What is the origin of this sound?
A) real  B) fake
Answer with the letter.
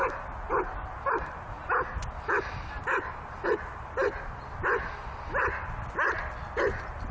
A